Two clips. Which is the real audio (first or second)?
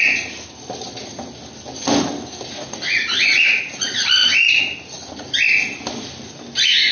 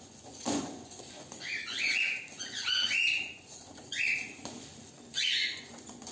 first